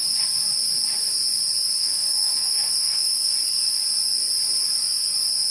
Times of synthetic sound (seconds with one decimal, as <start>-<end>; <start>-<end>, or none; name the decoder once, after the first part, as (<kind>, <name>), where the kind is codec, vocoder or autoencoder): 1.8-3.3 (codec, SNAC)